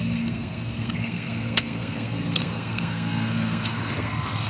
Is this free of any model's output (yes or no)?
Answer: no